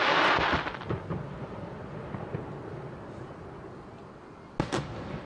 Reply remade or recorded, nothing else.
recorded